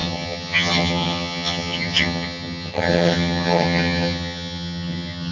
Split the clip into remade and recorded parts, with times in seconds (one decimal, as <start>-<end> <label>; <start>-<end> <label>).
0.0-5.3 remade